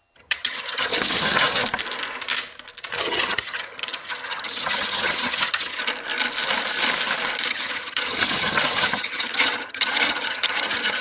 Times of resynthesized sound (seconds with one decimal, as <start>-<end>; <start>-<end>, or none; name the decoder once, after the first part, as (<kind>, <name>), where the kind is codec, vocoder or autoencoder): 0.0-1.6 (vocoder, HiFi-GAN); 3.0-5.8; 7.5-11.0